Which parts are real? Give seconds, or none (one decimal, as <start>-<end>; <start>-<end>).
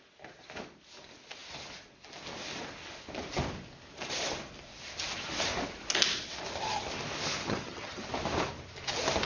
0.0-7.4; 8.0-9.3